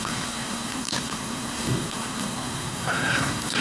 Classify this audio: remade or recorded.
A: remade